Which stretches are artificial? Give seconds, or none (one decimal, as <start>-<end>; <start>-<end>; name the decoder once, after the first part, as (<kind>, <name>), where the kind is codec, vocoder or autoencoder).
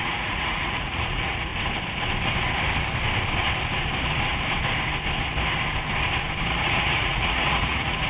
0.0-1.5 (vocoder, Vocos); 6.4-8.1